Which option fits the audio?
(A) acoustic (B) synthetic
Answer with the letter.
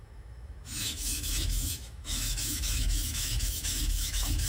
B